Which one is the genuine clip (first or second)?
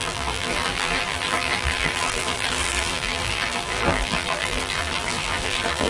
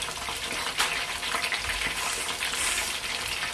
second